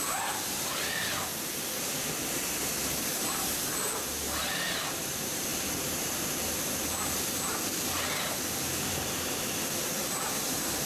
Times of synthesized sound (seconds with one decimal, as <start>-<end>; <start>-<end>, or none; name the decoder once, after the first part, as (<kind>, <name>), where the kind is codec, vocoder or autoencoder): 0.0-1.3 (vocoder, BigVGAN v2); 3.0-10.9

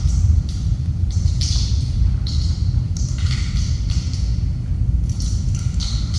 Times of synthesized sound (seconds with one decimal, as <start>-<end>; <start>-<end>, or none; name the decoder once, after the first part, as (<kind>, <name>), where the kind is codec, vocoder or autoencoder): 0.7-4.2 (vocoder, BigVGAN v2)

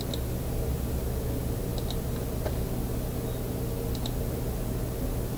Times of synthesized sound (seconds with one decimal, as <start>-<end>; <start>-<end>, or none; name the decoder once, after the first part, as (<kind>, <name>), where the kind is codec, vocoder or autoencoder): none

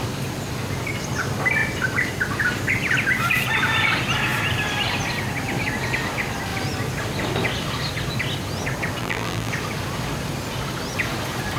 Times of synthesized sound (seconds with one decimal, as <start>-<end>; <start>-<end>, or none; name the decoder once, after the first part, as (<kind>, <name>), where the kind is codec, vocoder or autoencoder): 9.0-9.5 (vocoder, BigVGAN v2)

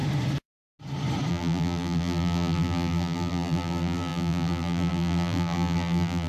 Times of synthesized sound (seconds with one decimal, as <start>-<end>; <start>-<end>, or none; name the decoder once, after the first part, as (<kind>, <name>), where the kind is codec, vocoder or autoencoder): 1.3-6.3 (vocoder, BigVGAN v2)

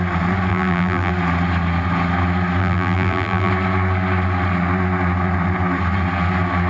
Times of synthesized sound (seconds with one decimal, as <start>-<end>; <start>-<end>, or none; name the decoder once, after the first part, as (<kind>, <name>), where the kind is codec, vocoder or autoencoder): 0.5-1.1 (vocoder, BigVGAN v2); 2.6-3.5

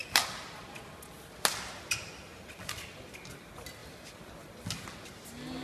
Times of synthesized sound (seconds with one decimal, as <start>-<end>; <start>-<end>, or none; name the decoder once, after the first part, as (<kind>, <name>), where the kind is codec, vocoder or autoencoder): 3.8-4.3 (vocoder, BigVGAN v2)